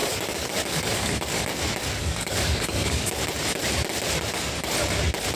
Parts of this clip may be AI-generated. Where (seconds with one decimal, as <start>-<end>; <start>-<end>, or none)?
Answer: 0.0-1.4; 2.0-3.2